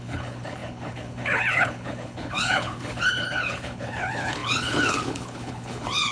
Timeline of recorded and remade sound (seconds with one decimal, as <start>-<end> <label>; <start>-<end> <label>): 0.0-6.1 remade

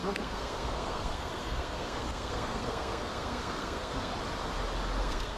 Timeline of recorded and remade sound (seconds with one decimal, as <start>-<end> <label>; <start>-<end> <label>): 0.0-4.1 remade; 4.1-5.0 recorded; 5.0-5.4 remade